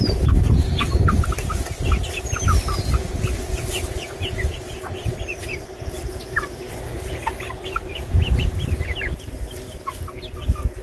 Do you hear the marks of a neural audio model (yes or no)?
no